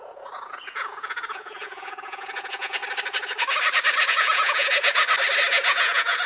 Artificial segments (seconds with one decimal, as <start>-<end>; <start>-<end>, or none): 0.0-2.8; 4.1-5.0; 5.5-6.3